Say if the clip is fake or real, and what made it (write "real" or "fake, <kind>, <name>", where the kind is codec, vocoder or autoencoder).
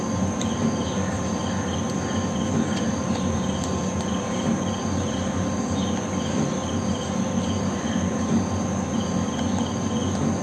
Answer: real